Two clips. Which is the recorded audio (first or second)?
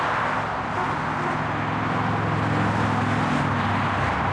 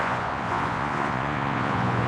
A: first